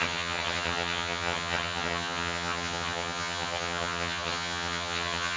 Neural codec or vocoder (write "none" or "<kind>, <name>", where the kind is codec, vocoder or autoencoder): vocoder, HiFi-GAN